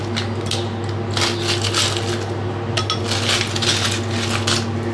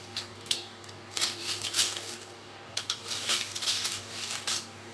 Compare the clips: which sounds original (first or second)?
first